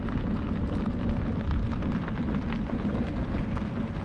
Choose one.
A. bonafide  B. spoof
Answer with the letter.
A